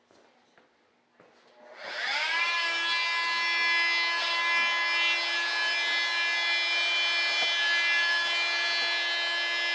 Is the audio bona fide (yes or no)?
yes